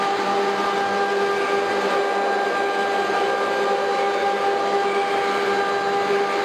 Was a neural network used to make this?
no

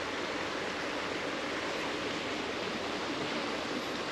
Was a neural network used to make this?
no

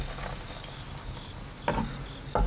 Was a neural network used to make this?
no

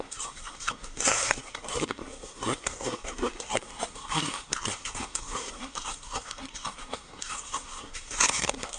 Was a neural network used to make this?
yes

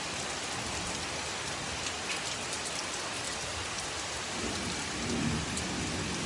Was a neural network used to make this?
no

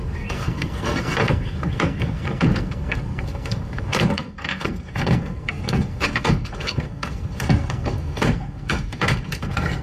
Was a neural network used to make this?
yes